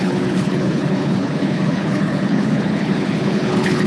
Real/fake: fake